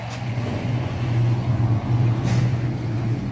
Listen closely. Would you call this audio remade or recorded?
remade